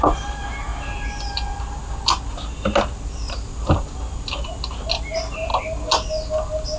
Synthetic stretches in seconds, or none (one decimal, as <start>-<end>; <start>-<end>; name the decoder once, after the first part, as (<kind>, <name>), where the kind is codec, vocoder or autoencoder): none